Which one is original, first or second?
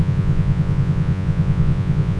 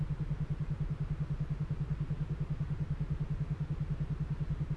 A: second